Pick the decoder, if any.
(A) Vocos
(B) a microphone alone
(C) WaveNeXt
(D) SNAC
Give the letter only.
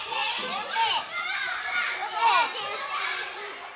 B